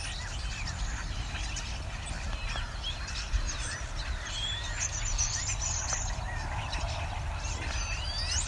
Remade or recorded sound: recorded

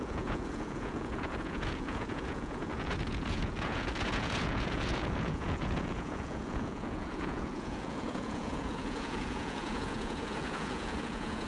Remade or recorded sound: remade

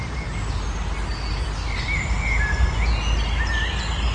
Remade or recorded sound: recorded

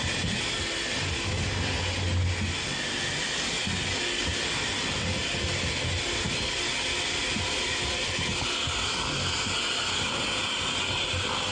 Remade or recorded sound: recorded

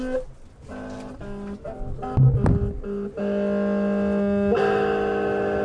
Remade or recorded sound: recorded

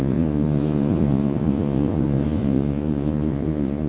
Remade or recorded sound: remade